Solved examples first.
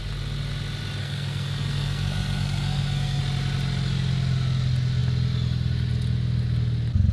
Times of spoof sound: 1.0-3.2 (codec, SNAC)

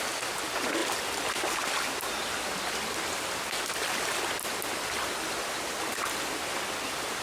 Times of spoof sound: none

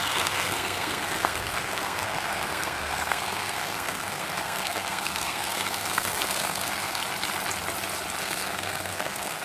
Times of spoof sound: 0.0-7.0 (codec, SNAC); 8.2-9.4

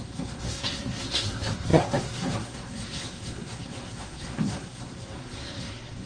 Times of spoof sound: 0.0-6.1 (codec, SNAC)

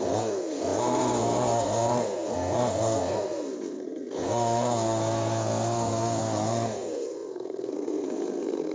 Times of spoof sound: 0.0-8.7 (codec, SNAC)